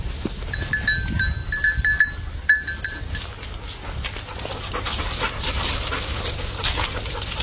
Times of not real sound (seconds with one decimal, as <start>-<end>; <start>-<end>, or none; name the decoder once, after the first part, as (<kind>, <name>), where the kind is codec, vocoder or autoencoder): none